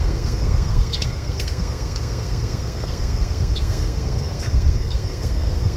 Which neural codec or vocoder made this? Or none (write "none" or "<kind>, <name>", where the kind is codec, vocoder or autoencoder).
codec, SNAC